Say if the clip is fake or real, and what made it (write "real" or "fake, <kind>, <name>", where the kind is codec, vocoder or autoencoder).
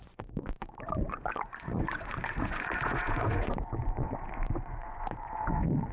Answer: fake, vocoder, Vocos